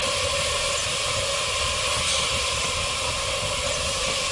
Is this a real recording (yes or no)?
yes